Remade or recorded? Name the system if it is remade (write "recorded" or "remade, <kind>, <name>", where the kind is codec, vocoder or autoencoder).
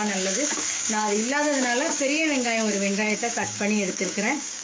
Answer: remade, codec, DAC